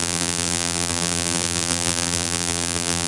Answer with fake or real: fake